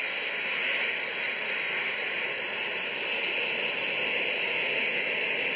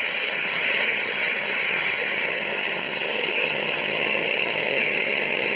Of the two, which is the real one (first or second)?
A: first